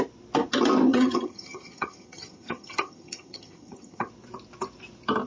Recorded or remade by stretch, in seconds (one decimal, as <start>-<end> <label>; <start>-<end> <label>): 0.0-0.9 recorded; 0.9-4.1 remade; 4.1-5.3 recorded